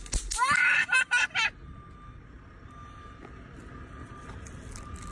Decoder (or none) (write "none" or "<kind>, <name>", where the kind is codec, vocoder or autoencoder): none